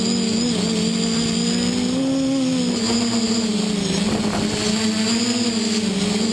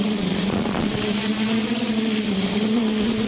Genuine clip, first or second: first